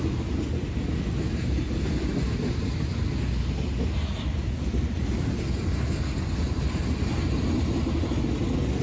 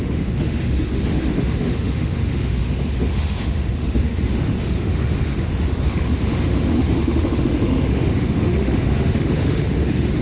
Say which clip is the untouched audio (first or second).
first